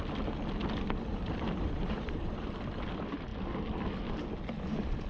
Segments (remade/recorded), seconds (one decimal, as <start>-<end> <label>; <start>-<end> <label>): 0.0-1.1 recorded; 1.1-2.6 remade; 2.6-5.1 recorded